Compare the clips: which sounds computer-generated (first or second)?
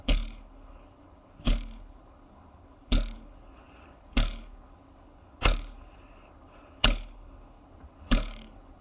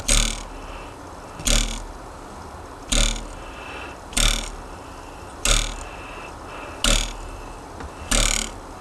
first